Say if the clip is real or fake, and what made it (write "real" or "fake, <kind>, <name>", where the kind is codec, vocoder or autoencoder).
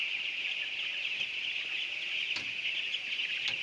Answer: real